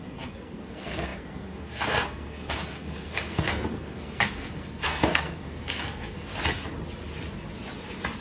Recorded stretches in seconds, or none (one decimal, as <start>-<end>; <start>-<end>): 6.3-8.2